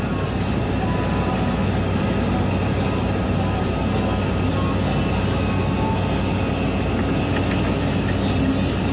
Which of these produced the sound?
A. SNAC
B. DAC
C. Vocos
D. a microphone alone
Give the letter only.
D